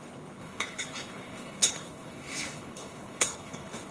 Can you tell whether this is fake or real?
fake